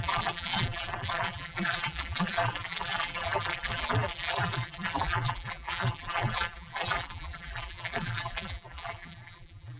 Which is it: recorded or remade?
remade